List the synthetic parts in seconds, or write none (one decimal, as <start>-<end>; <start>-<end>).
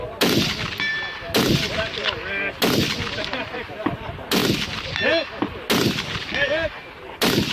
none